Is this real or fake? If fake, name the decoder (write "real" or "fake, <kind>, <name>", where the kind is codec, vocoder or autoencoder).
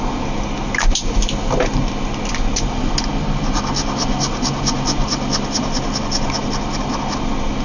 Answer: real